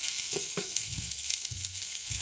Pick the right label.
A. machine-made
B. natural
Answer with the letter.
A